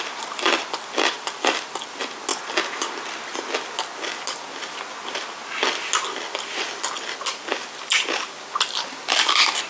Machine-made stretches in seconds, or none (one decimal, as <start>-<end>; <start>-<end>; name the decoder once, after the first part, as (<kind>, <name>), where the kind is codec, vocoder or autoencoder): none